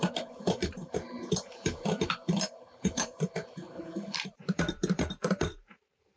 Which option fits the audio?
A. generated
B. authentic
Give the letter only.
A